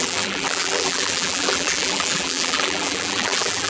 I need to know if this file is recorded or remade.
remade